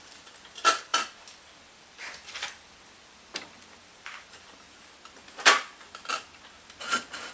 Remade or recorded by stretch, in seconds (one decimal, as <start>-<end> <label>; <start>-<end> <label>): 0.0-0.9 recorded; 0.9-4.9 remade; 4.9-7.3 recorded